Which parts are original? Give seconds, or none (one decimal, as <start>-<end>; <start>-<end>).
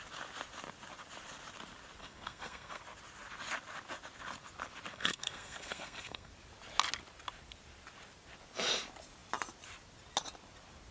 0.0-2.0; 2.8-4.9; 6.3-10.9